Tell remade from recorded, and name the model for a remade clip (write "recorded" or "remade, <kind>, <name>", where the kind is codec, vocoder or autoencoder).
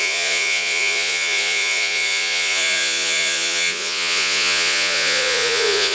remade, vocoder, Vocos